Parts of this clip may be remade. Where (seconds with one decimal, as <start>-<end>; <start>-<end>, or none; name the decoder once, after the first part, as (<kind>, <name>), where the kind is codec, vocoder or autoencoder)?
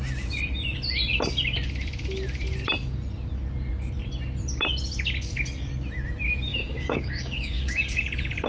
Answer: 6.5-8.0 (codec, DAC)